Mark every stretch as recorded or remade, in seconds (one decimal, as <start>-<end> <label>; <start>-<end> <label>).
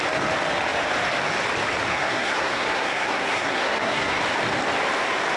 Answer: 0.0-1.9 recorded; 1.9-4.2 remade; 4.2-5.4 recorded